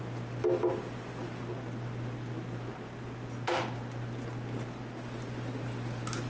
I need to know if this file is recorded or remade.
recorded